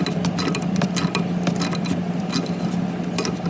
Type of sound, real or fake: real